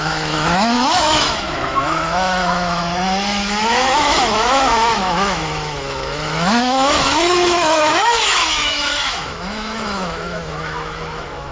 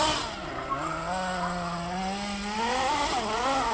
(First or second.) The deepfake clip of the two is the first